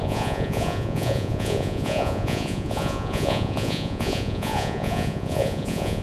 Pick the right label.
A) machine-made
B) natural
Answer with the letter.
A